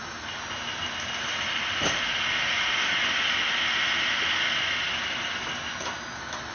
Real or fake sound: real